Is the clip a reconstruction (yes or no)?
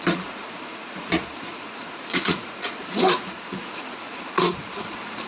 yes